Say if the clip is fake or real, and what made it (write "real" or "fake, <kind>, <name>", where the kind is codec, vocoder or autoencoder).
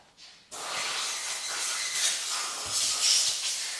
real